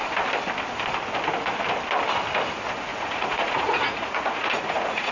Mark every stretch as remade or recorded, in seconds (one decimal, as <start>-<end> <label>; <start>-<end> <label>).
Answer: 0.0-2.9 recorded; 2.9-5.1 remade